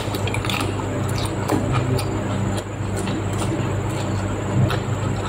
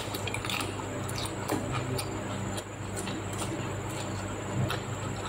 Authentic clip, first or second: second